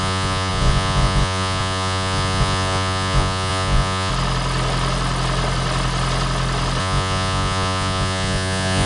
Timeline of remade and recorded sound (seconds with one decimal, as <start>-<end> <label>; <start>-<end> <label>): 0.0-4.1 remade; 4.1-6.8 recorded; 6.8-8.9 remade